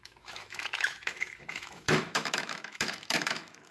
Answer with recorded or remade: remade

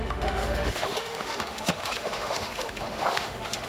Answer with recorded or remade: remade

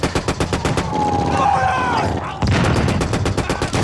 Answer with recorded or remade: recorded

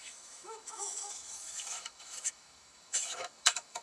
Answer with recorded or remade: remade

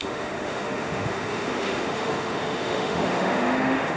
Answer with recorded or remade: remade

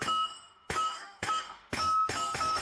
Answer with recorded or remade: remade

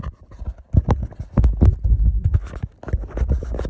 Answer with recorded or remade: recorded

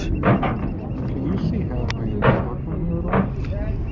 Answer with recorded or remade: recorded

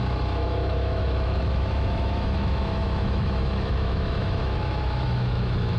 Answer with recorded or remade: remade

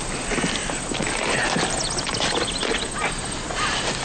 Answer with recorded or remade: recorded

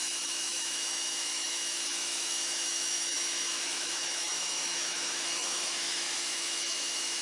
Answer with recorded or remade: remade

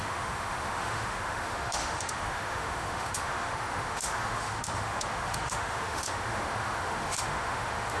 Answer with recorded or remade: remade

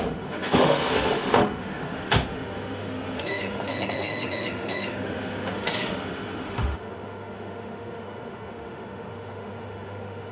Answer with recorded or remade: remade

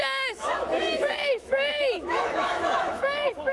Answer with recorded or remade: remade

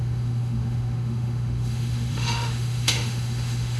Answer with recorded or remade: remade